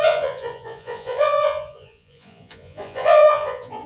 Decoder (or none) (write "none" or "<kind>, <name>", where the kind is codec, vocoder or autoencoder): vocoder, Vocos